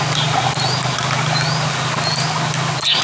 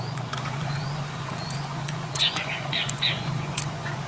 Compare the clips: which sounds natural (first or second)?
first